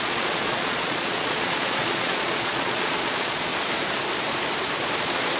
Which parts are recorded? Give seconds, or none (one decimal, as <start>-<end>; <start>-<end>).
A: 3.5-5.0